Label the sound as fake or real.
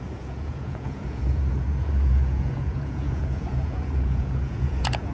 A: fake